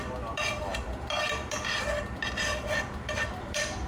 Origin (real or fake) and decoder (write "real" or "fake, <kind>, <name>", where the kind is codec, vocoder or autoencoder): fake, vocoder, BigVGAN v2